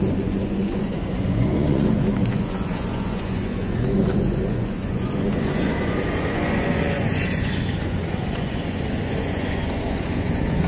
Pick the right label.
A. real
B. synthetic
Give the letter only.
B